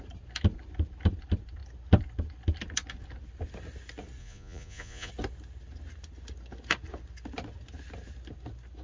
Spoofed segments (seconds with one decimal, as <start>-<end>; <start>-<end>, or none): 4.2-5.1